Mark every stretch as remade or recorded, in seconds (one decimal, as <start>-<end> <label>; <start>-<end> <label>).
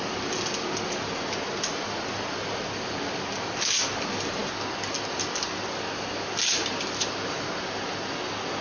0.0-8.6 recorded